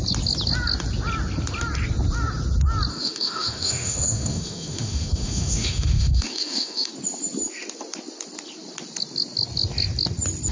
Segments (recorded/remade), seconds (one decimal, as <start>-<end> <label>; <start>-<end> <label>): 0.0-2.9 recorded; 2.9-6.9 remade; 6.9-10.5 recorded